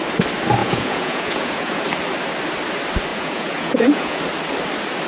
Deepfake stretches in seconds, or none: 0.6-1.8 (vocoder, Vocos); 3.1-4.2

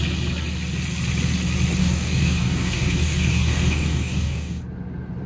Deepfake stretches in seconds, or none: 1.8-4.6 (codec, DAC)

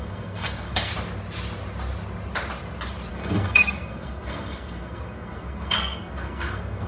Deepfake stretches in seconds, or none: 0.0-0.9 (codec, SNAC); 3.1-6.9

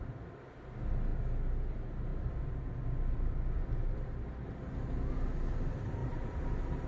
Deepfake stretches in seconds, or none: 2.1-5.1 (vocoder, BigVGAN v2); 6.0-6.5

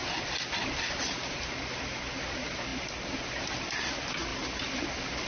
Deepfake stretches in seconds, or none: none